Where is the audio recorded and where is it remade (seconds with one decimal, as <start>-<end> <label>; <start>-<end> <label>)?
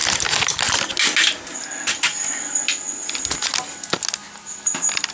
0.0-5.1 recorded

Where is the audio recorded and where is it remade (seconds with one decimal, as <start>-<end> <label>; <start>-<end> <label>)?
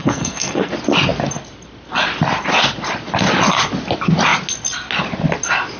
0.0-0.7 remade; 0.7-5.8 recorded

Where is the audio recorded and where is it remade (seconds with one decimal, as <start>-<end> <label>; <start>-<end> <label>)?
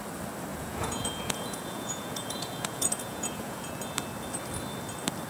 0.0-0.5 recorded; 0.5-3.7 remade; 3.7-5.3 recorded